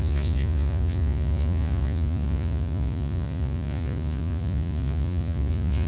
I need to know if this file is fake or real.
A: fake